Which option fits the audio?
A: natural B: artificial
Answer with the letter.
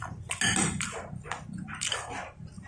A